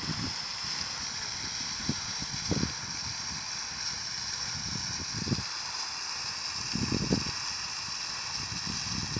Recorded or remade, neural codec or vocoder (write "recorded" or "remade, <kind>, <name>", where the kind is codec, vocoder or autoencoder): recorded